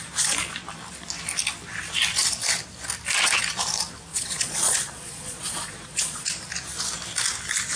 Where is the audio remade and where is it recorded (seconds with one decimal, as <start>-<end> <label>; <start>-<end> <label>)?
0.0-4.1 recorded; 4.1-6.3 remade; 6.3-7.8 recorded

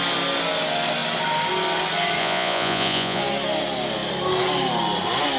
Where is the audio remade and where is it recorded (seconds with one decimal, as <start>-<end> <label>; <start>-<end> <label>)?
0.0-2.2 recorded; 2.2-3.2 remade; 3.2-5.4 recorded

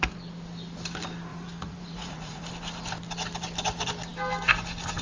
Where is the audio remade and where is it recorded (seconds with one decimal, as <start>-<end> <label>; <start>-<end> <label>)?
0.0-1.3 recorded; 1.3-2.5 remade; 2.5-5.0 recorded

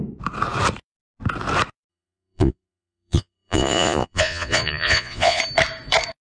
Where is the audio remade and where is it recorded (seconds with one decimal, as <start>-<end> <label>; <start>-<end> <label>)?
0.0-1.9 recorded; 1.9-5.4 remade; 5.4-6.2 recorded